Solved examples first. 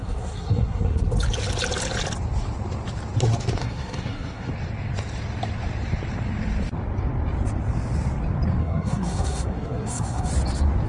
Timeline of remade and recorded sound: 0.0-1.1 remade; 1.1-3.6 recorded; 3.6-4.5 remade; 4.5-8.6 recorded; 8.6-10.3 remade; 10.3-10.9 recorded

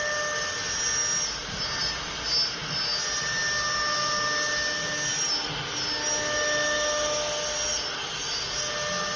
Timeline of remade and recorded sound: 0.0-9.2 recorded

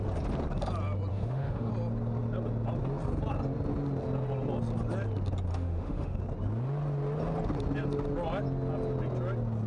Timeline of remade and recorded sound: 0.0-1.1 recorded; 1.1-1.7 remade; 1.7-5.5 recorded; 5.5-6.2 remade; 6.2-9.7 recorded

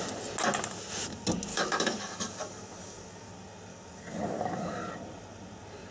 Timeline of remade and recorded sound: 0.0-1.5 recorded; 1.5-3.3 remade; 3.3-3.7 recorded; 3.7-4.9 remade; 4.9-5.9 recorded

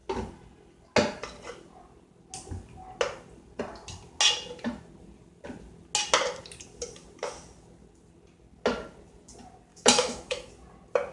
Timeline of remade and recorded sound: 0.0-9.7 recorded; 9.7-10.5 remade; 10.5-11.1 recorded

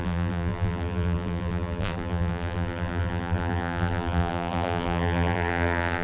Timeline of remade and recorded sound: 0.0-6.0 remade

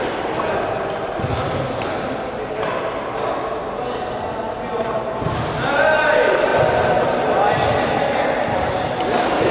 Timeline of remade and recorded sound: 0.0-9.5 recorded

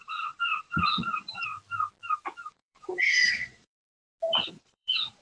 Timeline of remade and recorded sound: 0.0-1.5 remade; 1.5-2.5 recorded; 2.5-3.9 remade; 3.9-4.5 recorded; 4.5-5.2 remade